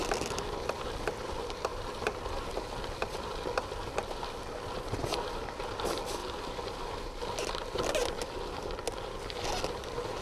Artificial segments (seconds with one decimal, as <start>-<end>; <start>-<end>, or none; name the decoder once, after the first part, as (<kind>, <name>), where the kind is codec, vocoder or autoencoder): 6.2-7.2 (vocoder, BigVGAN v2)